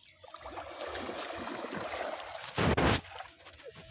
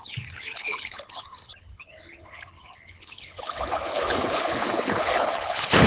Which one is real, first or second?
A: first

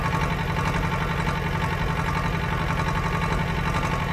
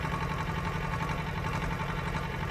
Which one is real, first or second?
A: first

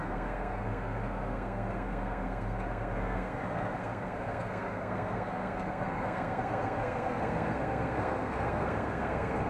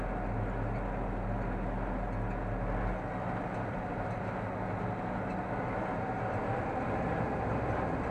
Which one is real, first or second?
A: second